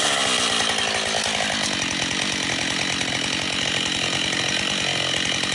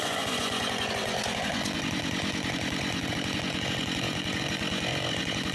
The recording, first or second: first